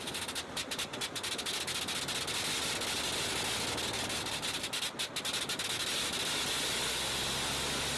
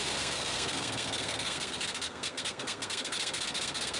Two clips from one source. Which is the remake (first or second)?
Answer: second